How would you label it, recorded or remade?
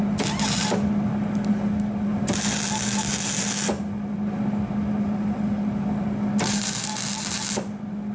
recorded